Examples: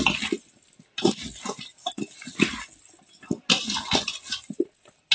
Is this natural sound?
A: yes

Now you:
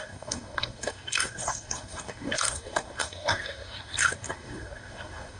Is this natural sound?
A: no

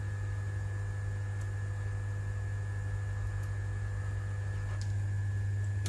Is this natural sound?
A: yes